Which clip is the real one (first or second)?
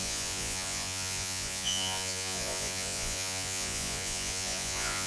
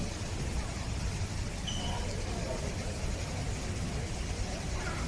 second